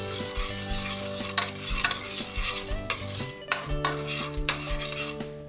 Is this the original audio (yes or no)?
yes